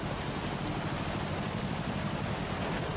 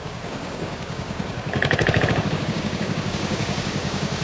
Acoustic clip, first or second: first